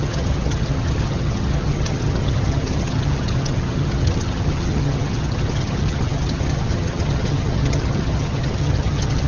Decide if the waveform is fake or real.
fake